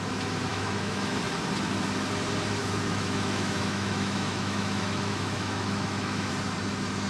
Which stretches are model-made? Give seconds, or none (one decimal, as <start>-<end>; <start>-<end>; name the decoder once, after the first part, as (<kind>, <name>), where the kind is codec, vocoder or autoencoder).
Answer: 0.5-1.2 (autoencoder, DAC-VAE); 2.6-6.3